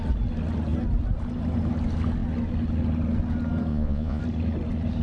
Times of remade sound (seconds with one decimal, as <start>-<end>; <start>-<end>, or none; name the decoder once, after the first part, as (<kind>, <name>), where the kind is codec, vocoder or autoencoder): 3.7-4.2 (vocoder, Vocos)